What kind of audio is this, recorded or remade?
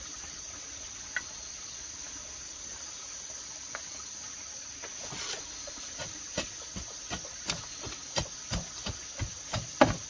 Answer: recorded